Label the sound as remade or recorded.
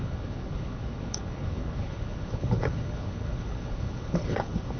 remade